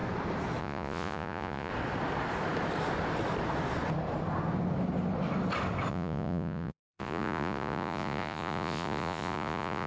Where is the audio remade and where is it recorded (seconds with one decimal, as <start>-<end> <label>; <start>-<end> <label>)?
0.0-0.6 recorded; 0.6-1.7 remade; 1.7-5.9 recorded; 5.9-9.9 remade